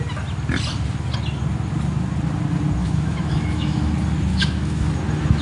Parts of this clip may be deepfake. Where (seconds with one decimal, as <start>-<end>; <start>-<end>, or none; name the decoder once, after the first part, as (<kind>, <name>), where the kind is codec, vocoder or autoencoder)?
2.8-3.9 (autoencoder, DAC-VAE); 4.3-4.9